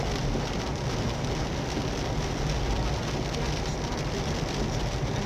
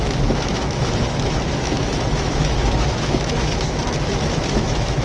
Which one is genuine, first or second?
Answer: first